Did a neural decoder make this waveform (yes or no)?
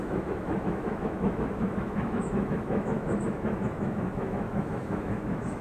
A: yes